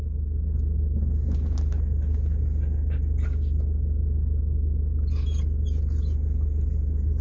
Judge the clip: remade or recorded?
recorded